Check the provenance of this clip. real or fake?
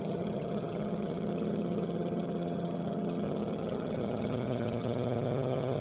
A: fake